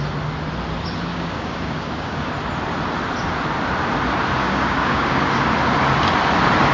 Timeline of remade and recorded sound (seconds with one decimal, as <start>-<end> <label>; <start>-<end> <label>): 0.0-1.1 recorded; 1.1-2.3 remade; 2.3-4.4 recorded; 4.4-5.4 remade; 5.4-6.7 recorded